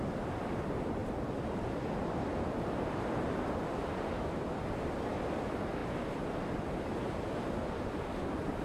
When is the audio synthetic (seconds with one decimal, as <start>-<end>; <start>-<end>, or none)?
0.0-5.8; 6.3-8.6

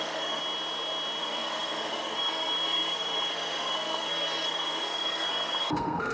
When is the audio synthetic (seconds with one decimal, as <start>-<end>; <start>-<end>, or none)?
0.0-0.4; 1.2-6.1